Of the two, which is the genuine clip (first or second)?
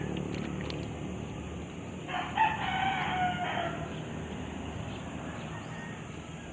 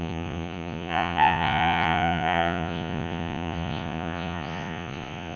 first